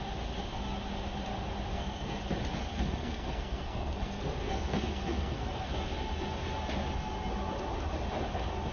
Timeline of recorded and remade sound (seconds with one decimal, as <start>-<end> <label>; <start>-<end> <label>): 0.0-1.7 recorded; 1.7-2.2 remade; 2.2-2.7 recorded; 2.7-5.7 remade; 5.7-8.7 recorded